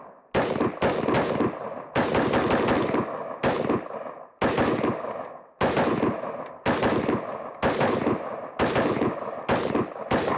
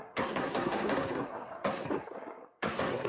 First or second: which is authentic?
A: first